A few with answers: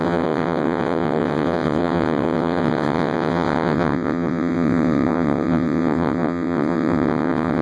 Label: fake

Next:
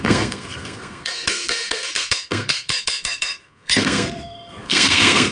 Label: fake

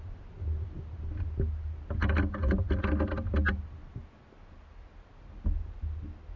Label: real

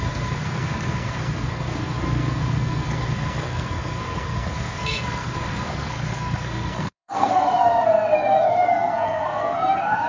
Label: fake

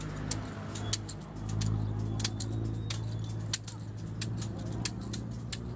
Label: real